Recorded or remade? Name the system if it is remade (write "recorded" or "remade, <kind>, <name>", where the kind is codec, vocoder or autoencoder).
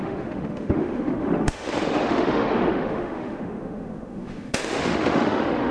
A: remade, autoencoder, DAC-VAE